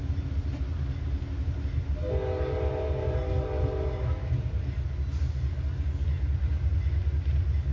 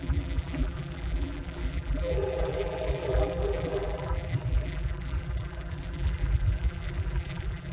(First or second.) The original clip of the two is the first